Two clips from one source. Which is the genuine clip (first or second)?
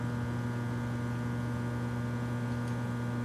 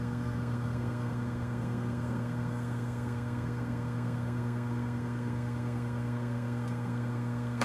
first